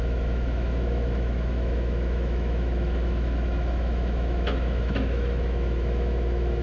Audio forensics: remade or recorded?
remade